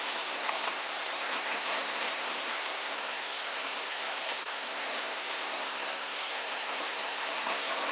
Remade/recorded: remade